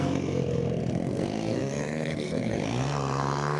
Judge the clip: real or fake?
fake